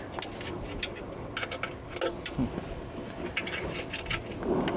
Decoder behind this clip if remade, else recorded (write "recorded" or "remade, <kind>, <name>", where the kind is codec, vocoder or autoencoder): recorded